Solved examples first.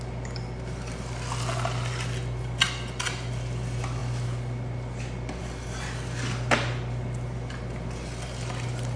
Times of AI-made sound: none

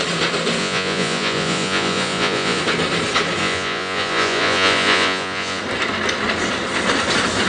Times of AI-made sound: 0.6-2.6; 3.4-5.6

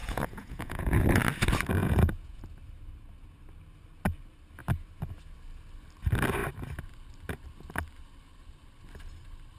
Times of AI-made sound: 0.0-1.2; 1.8-2.4

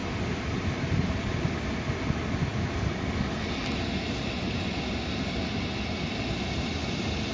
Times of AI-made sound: none